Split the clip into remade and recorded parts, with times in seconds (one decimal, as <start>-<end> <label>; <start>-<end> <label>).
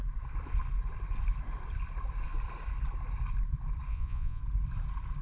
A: 0.0-3.9 recorded; 3.9-4.4 remade; 4.4-5.2 recorded